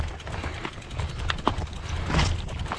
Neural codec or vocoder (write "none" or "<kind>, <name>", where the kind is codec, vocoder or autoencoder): none